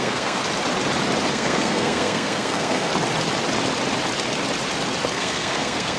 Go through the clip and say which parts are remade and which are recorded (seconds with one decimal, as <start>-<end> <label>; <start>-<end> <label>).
0.0-0.4 remade; 0.4-1.3 recorded; 1.3-2.9 remade; 2.9-5.1 recorded; 5.1-6.0 remade